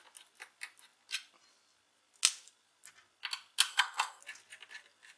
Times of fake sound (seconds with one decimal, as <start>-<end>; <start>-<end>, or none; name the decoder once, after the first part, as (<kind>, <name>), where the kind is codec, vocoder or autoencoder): 3.7-4.2 (codec, SNAC)